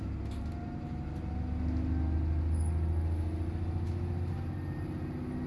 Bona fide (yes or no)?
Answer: yes